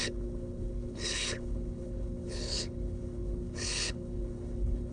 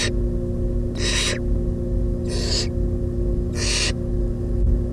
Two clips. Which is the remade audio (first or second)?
first